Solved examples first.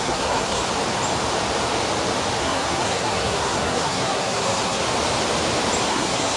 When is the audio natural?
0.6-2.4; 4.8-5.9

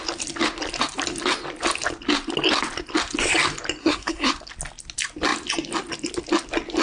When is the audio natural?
0.0-3.8; 4.3-6.8

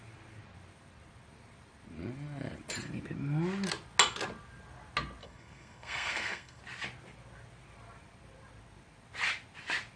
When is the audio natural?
0.0-5.2; 6.6-10.0

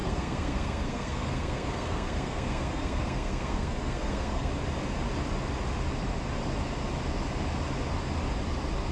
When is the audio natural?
4.5-8.9

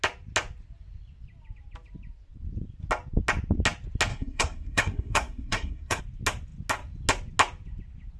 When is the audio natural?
0.0-4.1; 6.0-8.2

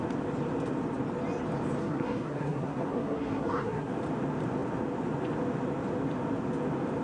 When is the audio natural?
0.0-1.8; 3.9-7.0

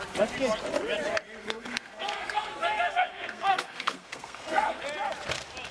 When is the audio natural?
0.0-1.4; 4.8-5.7

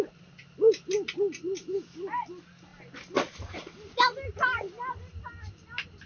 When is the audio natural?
0.0-6.1